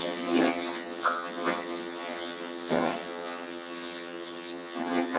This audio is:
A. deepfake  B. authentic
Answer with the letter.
A